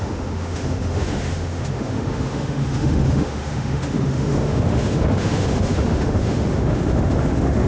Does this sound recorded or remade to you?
remade